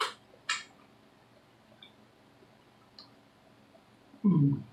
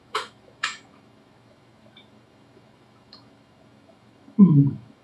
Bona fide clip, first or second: first